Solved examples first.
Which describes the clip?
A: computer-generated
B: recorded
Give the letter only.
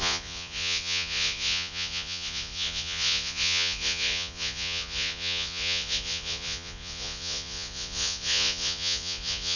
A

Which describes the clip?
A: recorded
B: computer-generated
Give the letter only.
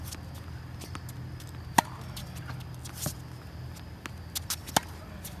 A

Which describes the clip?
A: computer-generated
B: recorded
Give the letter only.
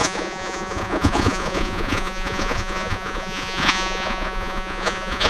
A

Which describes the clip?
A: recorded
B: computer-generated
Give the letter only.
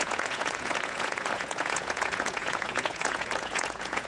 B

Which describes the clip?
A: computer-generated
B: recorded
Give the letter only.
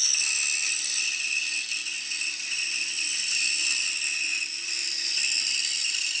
B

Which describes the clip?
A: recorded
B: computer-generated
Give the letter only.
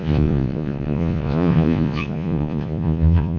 B